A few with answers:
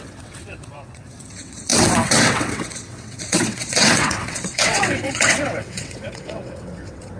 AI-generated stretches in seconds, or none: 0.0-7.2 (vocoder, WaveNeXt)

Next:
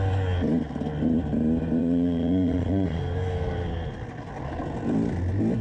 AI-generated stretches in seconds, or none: 1.8-3.0 (vocoder, Vocos)

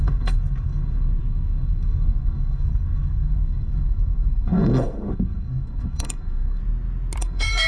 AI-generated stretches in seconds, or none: 0.0-6.6 (codec, SNAC); 7.2-7.7

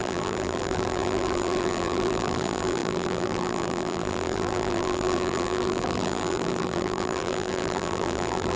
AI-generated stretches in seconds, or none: 0.0-8.6 (vocoder, BigVGAN v2)